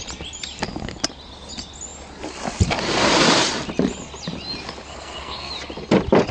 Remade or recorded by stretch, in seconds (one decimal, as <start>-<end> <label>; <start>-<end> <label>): 0.0-4.9 recorded; 4.9-5.5 remade; 5.5-6.3 recorded